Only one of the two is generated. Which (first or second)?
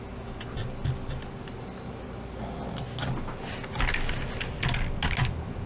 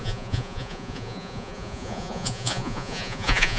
second